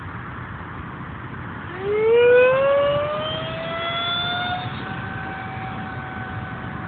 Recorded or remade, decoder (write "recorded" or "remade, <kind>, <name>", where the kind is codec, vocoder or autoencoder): recorded